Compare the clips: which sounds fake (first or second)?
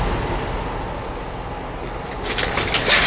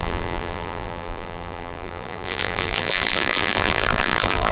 second